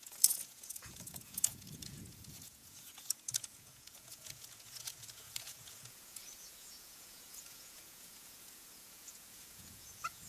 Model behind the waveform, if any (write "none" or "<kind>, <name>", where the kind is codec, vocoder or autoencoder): vocoder, Vocos